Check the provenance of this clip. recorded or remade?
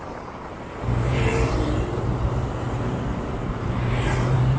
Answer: remade